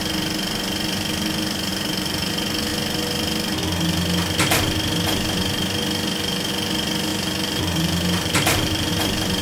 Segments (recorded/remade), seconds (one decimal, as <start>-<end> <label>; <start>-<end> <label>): 0.0-1.7 recorded; 1.7-2.3 remade; 2.3-7.1 recorded; 7.1-8.9 remade; 8.9-9.4 recorded